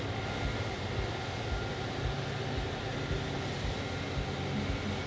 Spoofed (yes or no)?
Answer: no